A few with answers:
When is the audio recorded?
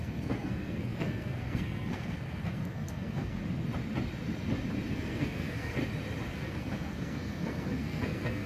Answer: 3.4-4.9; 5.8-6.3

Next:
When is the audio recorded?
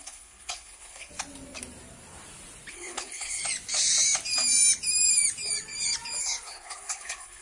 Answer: 1.1-2.7; 3.4-6.2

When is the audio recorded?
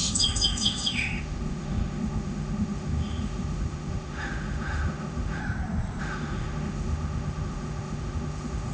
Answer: 5.4-6.0